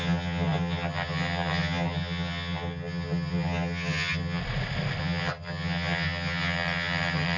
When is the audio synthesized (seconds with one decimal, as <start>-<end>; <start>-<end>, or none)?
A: 0.0-4.4; 5.0-7.4